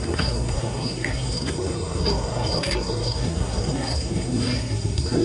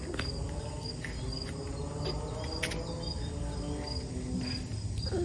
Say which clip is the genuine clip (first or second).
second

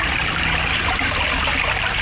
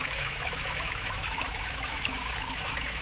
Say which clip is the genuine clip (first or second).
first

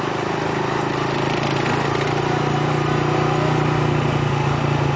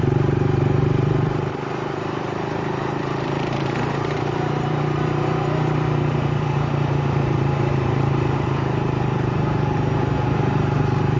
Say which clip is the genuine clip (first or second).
first